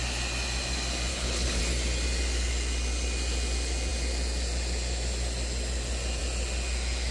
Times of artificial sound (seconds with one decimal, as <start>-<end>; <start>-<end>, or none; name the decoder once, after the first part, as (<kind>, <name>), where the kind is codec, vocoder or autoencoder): 1.1-1.6 (codec, HILCodec)